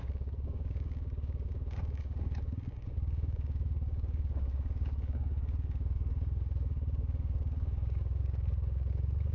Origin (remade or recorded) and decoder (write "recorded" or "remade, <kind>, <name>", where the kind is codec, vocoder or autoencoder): remade, codec, DAC